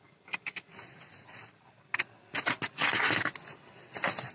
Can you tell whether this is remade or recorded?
recorded